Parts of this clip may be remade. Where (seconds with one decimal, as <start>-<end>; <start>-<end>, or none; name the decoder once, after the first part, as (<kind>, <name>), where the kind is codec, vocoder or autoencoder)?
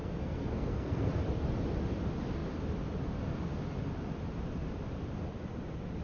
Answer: 0.0-1.1 (codec, SNAC)